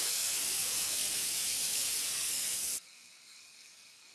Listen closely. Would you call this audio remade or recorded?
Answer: remade